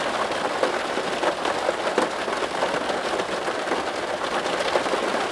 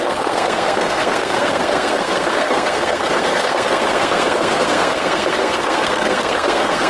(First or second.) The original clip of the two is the first